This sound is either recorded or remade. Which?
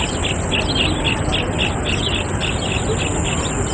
recorded